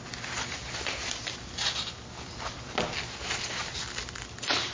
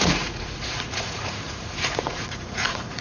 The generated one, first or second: second